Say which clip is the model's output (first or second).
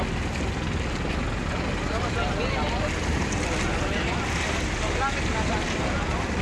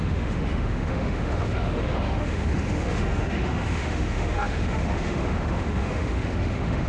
second